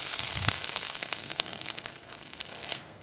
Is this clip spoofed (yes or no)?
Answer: yes